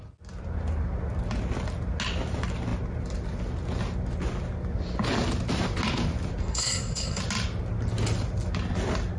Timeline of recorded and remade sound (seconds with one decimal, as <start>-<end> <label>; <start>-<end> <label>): 0.0-6.4 recorded; 6.4-7.2 remade; 7.2-9.2 recorded